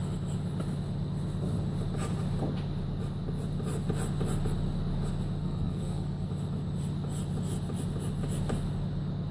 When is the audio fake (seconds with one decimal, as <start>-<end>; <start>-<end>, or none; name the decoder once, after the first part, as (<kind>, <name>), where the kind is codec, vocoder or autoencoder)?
5.4-6.3 (codec, SNAC)